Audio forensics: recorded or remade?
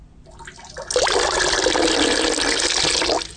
recorded